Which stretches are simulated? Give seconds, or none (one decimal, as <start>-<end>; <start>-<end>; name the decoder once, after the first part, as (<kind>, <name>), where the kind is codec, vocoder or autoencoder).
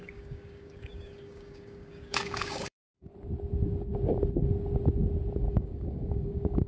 0.0-3.1 (codec, DAC); 5.5-6.7